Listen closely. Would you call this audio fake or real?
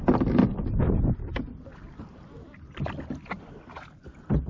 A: real